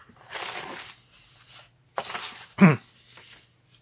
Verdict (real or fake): real